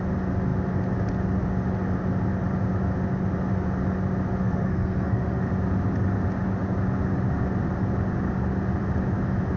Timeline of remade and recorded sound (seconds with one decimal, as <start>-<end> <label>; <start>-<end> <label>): 0.0-4.4 recorded; 4.4-5.4 remade; 5.4-9.6 recorded